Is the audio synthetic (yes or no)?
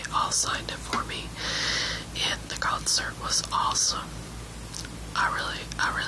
no